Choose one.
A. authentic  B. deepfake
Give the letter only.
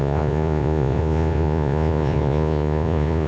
B